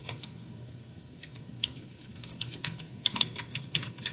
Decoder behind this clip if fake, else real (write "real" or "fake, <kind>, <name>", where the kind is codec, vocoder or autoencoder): fake, codec, SNAC